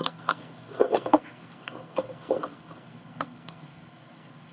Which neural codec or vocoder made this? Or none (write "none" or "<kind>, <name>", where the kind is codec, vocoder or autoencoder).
codec, SNAC